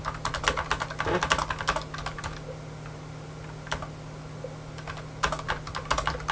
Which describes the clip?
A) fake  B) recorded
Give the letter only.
B